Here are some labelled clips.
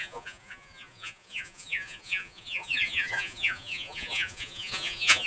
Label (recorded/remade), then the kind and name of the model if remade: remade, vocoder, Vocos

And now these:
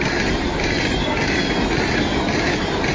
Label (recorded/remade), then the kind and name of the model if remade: recorded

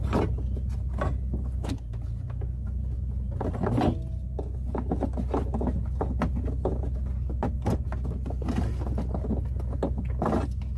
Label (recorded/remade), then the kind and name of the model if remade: recorded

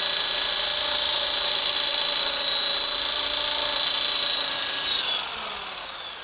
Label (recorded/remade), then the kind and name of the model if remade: recorded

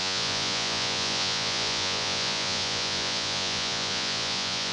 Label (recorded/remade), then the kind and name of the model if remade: remade, vocoder, Vocos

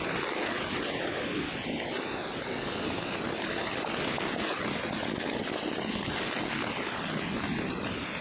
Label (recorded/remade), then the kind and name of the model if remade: recorded